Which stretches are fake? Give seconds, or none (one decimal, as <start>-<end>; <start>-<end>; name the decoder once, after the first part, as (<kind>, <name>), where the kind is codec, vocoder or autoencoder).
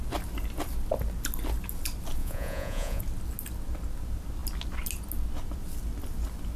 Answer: 2.2-3.0 (vocoder, Vocos)